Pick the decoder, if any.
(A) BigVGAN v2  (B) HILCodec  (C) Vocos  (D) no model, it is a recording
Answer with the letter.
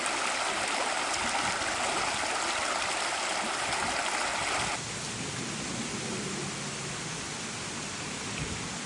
D